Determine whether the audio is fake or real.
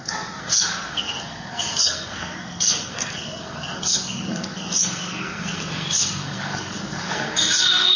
fake